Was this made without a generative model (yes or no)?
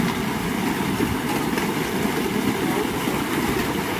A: yes